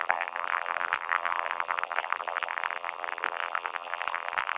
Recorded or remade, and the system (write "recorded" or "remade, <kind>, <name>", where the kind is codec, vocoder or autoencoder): remade, vocoder, BigVGAN v2